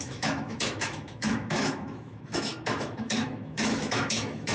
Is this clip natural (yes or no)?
no